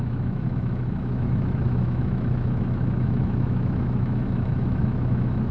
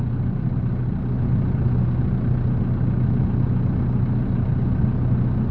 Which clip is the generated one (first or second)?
first